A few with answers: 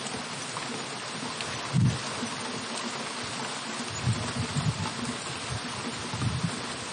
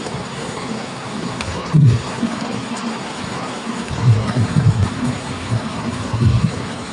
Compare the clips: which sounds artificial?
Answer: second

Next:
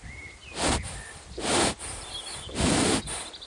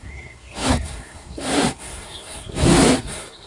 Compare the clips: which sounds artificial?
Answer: second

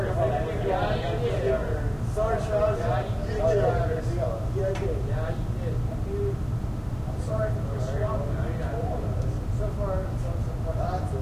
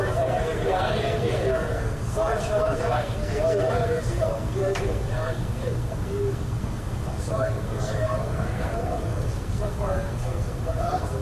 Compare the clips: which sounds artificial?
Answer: second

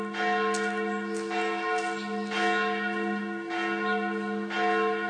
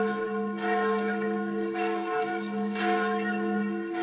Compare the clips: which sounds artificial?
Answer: second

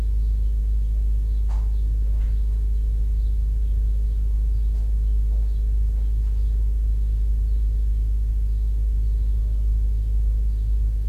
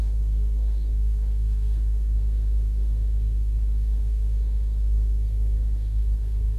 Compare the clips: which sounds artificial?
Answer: second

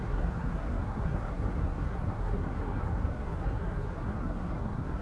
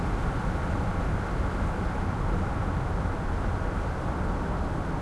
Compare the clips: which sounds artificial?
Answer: first